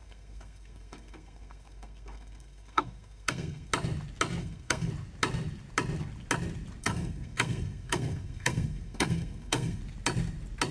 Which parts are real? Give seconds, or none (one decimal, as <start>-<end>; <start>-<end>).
3.7-4.4; 4.9-6.8; 9.8-10.7